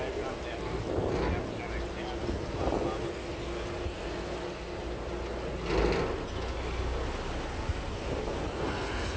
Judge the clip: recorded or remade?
recorded